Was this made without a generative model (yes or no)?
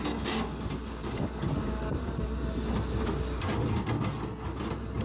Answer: yes